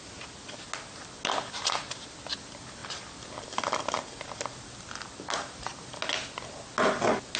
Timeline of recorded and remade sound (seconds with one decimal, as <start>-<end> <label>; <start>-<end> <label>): 0.0-7.4 recorded